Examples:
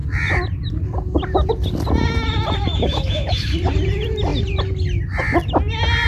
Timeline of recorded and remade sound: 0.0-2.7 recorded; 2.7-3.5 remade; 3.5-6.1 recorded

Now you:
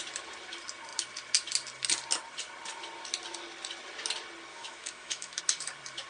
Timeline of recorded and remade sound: 0.0-4.5 recorded; 4.5-5.4 remade; 5.4-6.1 recorded

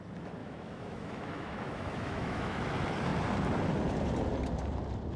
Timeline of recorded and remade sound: 0.0-0.4 recorded; 0.4-2.6 remade; 2.6-5.2 recorded

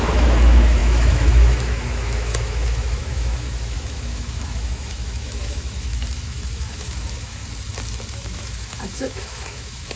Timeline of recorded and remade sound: 0.0-7.4 remade; 7.4-8.1 recorded; 8.1-10.0 remade

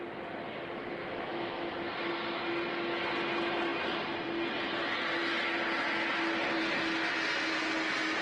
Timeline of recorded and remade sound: 0.0-1.0 recorded; 1.0-1.7 remade; 1.7-8.2 recorded

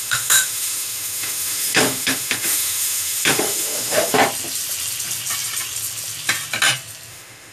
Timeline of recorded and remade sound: 0.0-4.2 remade; 4.2-7.1 recorded; 7.1-7.5 remade